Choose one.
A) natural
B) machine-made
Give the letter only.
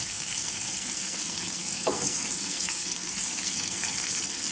B